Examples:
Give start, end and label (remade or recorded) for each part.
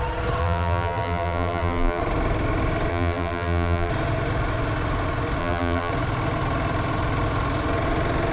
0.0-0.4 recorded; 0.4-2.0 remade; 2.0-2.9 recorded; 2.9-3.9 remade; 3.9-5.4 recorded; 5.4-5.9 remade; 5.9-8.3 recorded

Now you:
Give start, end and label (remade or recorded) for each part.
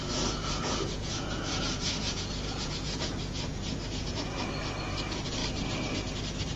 0.0-0.4 recorded; 0.4-4.4 remade; 4.4-6.6 recorded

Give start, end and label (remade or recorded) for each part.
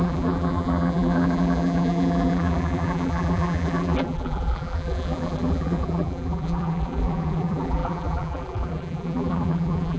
0.0-10.0 remade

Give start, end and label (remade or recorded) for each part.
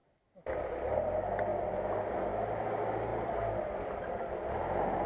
0.0-5.1 recorded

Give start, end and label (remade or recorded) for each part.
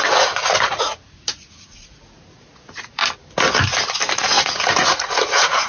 0.0-3.0 remade; 3.0-4.2 recorded; 4.2-5.7 remade